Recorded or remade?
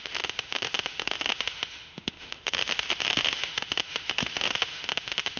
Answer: remade